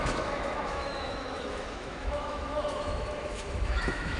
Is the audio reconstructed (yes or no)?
yes